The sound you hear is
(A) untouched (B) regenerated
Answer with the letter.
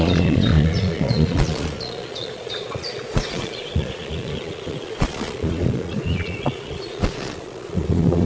B